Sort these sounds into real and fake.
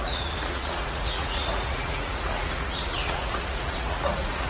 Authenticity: fake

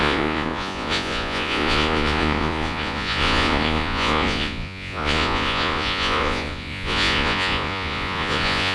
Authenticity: fake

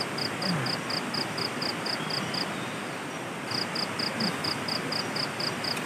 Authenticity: real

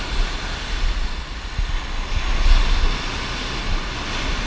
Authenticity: real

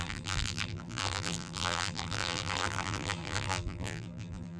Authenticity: fake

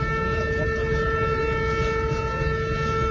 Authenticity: real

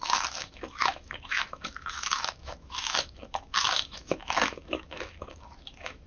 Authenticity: fake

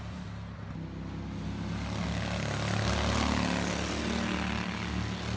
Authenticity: real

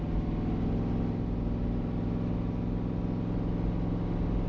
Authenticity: real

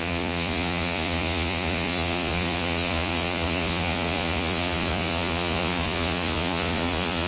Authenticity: fake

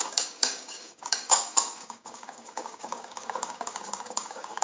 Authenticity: fake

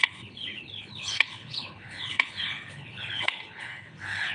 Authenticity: fake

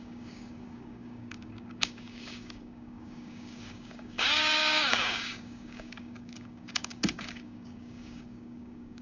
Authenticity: fake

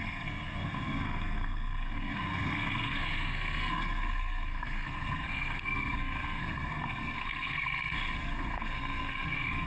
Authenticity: fake